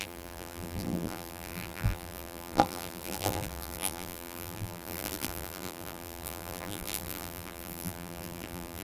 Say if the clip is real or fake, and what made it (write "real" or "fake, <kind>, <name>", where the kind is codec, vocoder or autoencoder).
fake, vocoder, BigVGAN v2